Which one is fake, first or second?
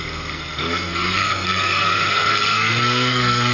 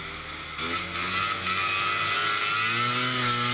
first